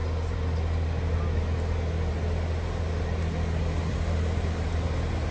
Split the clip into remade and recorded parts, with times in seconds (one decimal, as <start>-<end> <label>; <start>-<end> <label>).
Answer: 0.0-5.3 recorded